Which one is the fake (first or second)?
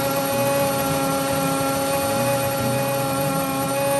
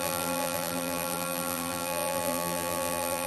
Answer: second